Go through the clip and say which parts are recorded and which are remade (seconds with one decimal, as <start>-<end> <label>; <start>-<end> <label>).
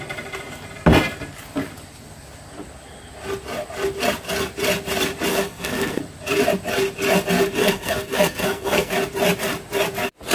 0.0-5.3 recorded; 5.3-6.0 remade; 6.0-7.6 recorded; 7.6-8.9 remade; 8.9-10.3 recorded